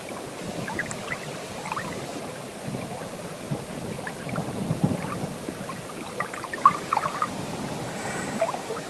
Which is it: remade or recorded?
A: recorded